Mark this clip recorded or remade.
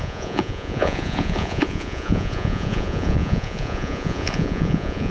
remade